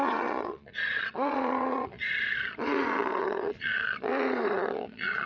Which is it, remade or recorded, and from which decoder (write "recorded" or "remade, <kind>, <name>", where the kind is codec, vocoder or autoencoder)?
remade, vocoder, Vocos